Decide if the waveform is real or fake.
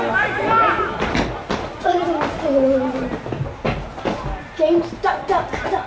real